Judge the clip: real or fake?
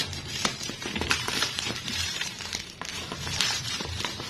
fake